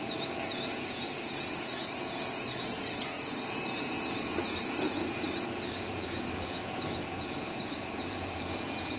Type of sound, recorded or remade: remade